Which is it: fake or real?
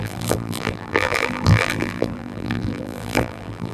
fake